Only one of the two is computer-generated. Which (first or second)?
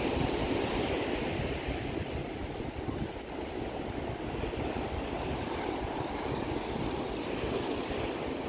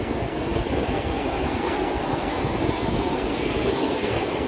second